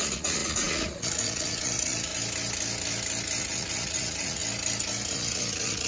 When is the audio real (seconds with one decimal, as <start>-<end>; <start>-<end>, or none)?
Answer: 2.1-3.4; 4.4-5.1